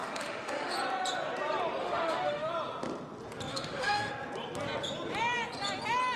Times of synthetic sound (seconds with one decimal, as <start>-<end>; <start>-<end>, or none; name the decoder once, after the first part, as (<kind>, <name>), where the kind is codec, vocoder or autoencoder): 0.0-0.7 (autoencoder, DAC-VAE); 1.8-2.5; 3.5-4.1